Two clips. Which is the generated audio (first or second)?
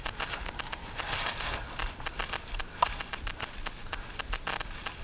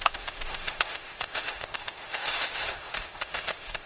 second